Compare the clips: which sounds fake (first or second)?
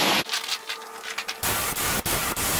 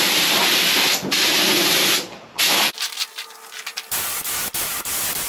second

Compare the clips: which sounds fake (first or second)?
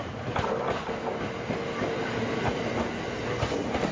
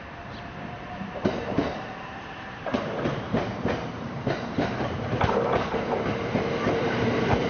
second